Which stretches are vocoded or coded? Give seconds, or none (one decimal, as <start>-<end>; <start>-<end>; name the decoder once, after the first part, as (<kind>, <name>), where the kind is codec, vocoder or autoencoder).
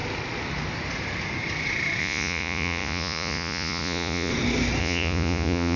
2.0-4.3 (vocoder, Vocos); 4.8-5.8